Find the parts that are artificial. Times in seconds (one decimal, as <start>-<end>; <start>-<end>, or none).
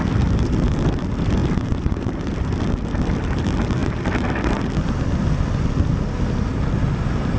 none